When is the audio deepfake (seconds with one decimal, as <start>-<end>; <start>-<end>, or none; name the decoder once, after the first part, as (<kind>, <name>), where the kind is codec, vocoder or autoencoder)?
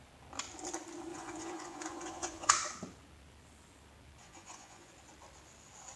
1.1-2.5 (vocoder, Vocos); 4.2-4.9